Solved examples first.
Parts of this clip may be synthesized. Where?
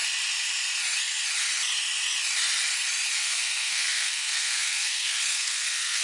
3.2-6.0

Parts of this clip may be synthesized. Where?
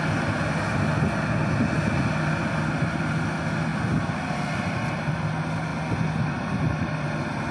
none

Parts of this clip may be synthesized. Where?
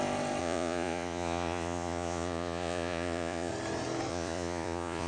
0.4-3.5; 4.1-5.1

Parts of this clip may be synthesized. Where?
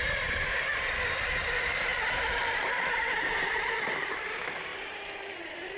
0.0-4.7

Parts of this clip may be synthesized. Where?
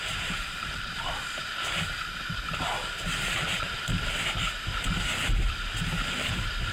0.0-1.5; 5.5-6.7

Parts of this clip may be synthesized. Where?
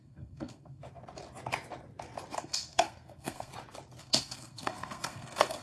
0.0-0.8; 2.4-3.5; 4.0-5.6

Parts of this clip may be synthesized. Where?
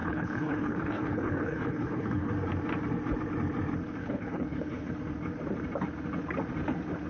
0.0-2.3; 4.0-4.9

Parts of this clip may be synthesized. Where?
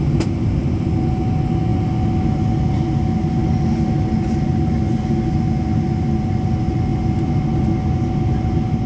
none